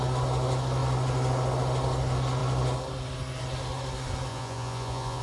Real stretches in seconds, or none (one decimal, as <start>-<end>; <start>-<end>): 0.0-4.3